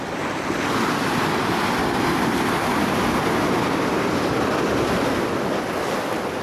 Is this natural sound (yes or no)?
yes